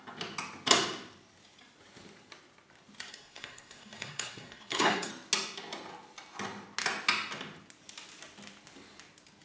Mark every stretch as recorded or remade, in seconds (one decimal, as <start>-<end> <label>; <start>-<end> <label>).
0.0-3.1 recorded; 3.1-5.1 remade; 5.1-9.4 recorded